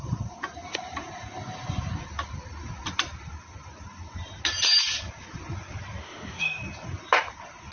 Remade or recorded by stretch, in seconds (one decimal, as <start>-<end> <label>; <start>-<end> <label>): 0.0-6.0 recorded; 6.0-6.6 remade; 6.6-7.7 recorded

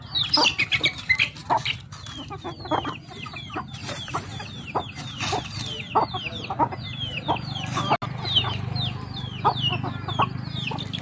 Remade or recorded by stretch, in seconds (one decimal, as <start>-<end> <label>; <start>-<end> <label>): 0.0-3.8 recorded; 3.8-4.8 remade; 4.8-11.0 recorded